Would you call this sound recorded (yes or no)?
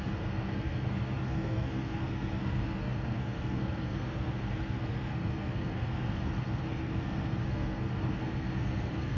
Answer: no